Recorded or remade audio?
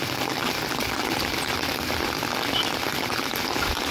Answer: recorded